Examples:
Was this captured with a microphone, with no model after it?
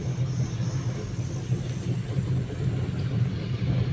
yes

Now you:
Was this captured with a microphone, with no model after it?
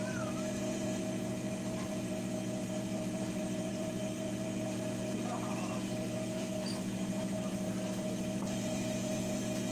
no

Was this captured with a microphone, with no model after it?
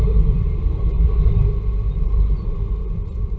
yes